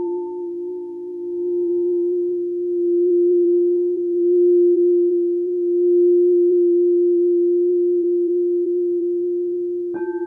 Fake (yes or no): yes